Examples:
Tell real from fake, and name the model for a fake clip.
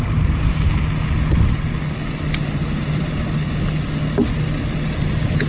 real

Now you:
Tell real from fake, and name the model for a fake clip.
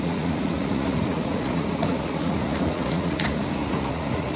fake, vocoder, Vocos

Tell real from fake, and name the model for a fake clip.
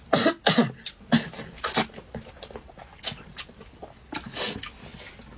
real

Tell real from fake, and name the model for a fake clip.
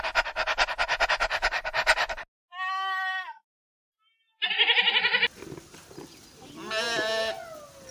real